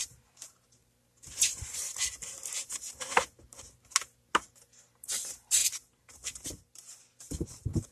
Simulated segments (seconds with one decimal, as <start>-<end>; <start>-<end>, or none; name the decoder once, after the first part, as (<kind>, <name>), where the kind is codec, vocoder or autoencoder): 0.0-1.8 (vocoder, BigVGAN v2); 5.0-5.6; 7.2-7.9